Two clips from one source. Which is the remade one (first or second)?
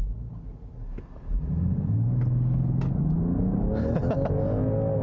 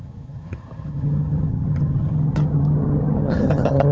second